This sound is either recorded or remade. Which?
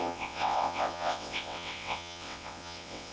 remade